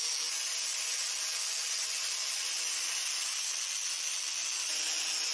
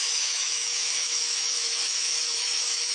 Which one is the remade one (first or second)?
second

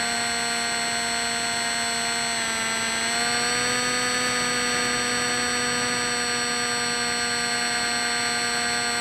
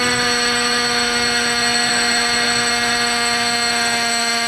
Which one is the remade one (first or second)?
second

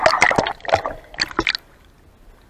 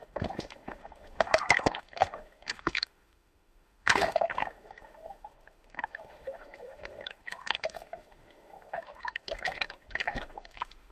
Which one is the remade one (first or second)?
second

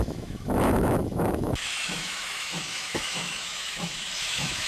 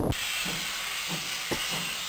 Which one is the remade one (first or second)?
first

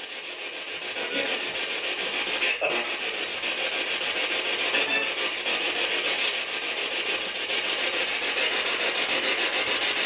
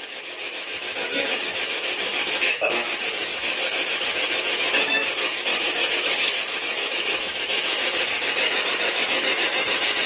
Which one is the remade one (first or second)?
second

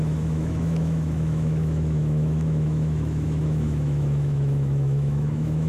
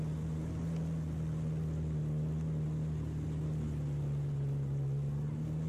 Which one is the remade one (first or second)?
first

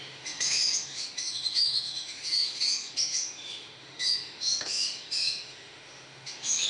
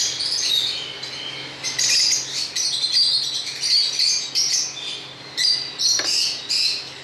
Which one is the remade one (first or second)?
first